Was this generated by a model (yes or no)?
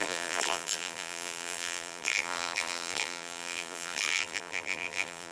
yes